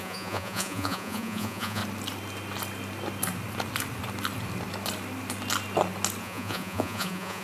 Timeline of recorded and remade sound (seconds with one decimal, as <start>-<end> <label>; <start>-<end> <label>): 0.0-1.8 remade; 1.8-6.2 recorded; 6.2-7.4 remade